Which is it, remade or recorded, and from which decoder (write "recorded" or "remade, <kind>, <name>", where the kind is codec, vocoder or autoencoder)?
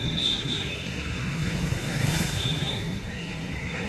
remade, codec, SNAC